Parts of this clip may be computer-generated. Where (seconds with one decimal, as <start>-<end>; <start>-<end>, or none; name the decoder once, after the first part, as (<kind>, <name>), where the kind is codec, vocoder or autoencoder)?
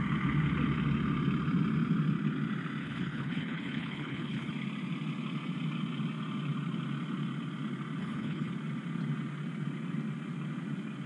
2.8-4.5 (codec, HILCodec); 8.0-8.5